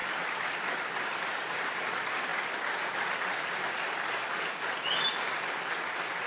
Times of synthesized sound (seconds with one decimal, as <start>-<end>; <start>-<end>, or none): 0.0-2.3; 3.1-6.3

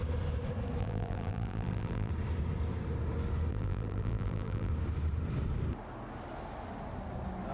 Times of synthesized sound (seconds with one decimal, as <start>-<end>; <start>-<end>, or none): 0.8-2.1; 3.5-4.7